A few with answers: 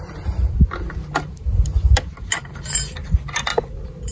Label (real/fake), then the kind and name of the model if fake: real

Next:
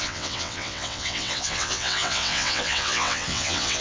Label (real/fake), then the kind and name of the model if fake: fake, vocoder, WaveNeXt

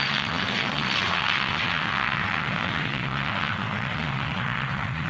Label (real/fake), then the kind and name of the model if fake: fake, vocoder, WaveNeXt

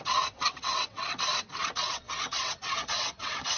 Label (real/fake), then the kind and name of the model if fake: fake, vocoder, WaveNeXt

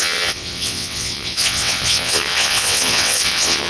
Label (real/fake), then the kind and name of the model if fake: fake, vocoder, WaveNeXt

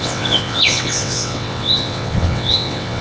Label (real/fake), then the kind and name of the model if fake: fake, vocoder, WaveNeXt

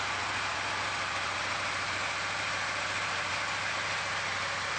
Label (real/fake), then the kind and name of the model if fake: real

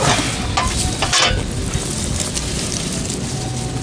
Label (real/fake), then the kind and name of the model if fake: real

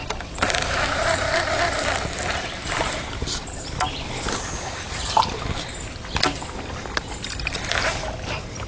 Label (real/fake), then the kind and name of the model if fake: real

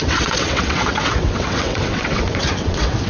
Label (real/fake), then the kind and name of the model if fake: fake, vocoder, WaveNeXt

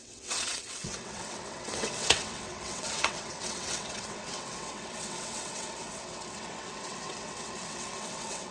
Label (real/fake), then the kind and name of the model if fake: fake, vocoder, WaveNeXt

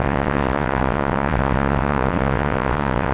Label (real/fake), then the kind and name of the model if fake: fake, vocoder, WaveNeXt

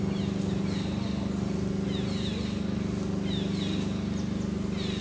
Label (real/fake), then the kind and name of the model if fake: real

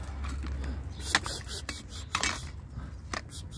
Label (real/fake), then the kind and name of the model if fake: real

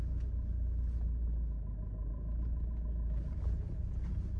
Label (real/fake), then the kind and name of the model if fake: real